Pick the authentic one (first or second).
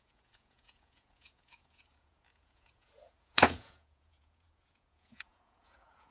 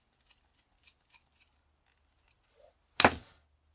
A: second